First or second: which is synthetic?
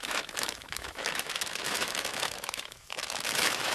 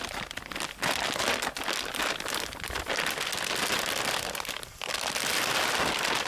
first